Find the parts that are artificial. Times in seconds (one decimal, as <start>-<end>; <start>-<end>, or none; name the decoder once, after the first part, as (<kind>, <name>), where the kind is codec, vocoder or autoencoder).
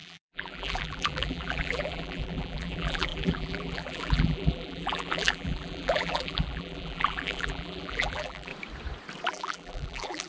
0.0-8.5 (vocoder, BigVGAN v2); 9.3-10.3